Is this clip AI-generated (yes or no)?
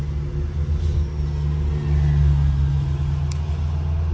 no